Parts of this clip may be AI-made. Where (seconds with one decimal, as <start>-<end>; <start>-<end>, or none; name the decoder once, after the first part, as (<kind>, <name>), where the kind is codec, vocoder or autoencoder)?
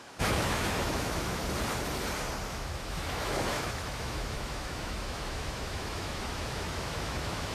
0.0-1.4 (autoencoder, DAC-VAE); 2.5-7.5